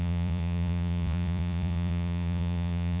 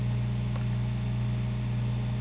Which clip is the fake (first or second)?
first